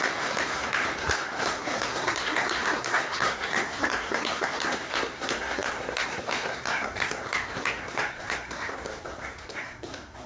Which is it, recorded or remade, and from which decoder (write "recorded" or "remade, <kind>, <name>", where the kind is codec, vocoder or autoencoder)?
remade, codec, SNAC